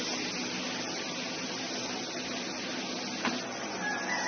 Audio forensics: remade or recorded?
recorded